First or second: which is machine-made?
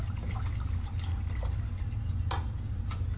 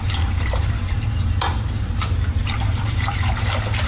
second